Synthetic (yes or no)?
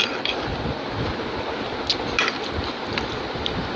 no